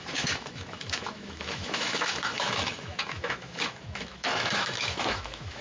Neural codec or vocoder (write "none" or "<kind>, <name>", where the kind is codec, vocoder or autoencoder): autoencoder, DAC-VAE